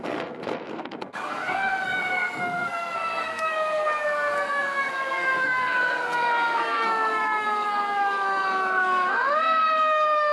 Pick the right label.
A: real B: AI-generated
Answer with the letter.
B